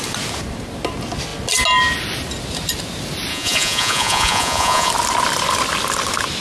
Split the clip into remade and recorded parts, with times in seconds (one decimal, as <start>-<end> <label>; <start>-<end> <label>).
0.0-3.3 recorded; 3.3-4.9 remade; 4.9-6.4 recorded